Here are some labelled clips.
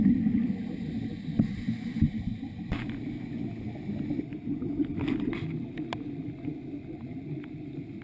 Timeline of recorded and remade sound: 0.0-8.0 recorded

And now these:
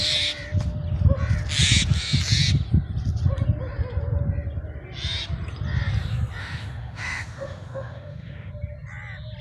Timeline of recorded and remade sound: 0.0-6.4 recorded; 6.4-8.5 remade; 8.5-9.4 recorded